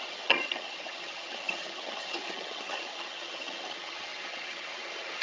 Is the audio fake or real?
fake